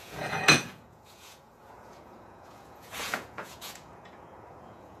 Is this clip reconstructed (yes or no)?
yes